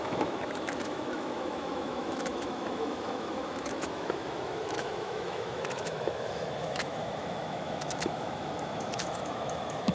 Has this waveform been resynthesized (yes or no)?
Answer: yes